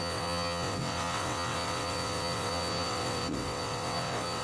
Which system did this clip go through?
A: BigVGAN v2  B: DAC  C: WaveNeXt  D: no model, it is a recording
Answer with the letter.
C